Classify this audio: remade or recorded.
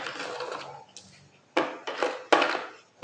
recorded